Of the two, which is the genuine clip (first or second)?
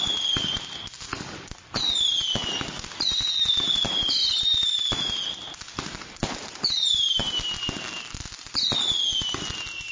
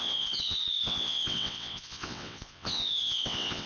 first